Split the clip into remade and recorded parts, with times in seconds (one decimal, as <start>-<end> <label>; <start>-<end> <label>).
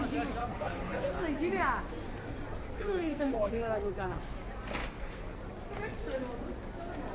0.0-0.4 recorded; 0.4-1.2 remade; 1.2-2.6 recorded; 2.6-4.2 remade; 4.2-4.8 recorded; 4.8-5.4 remade; 5.4-7.1 recorded